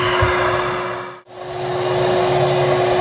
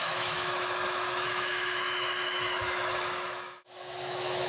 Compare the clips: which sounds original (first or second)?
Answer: first